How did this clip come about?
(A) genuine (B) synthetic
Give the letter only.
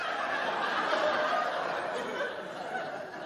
A